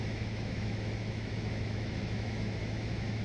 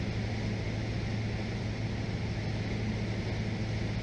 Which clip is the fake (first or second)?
first